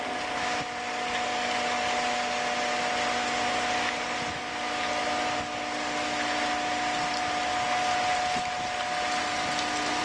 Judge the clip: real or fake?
real